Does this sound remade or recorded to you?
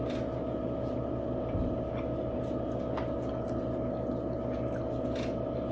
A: recorded